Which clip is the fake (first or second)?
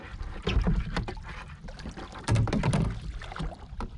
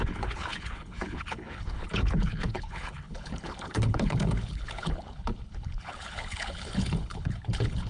second